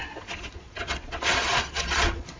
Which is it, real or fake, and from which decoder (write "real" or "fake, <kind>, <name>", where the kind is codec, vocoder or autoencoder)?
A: fake, vocoder, Vocos